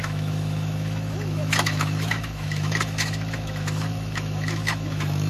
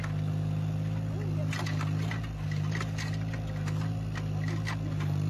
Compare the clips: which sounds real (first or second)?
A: second